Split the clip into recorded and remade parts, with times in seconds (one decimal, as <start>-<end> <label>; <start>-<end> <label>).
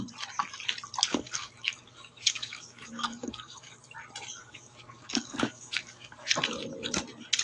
0.0-1.1 recorded; 1.1-3.8 remade; 3.8-4.4 recorded; 4.4-6.3 remade; 6.3-7.4 recorded